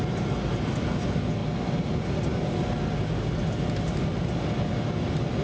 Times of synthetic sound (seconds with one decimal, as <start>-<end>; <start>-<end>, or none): none